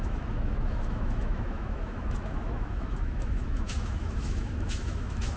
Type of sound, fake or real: fake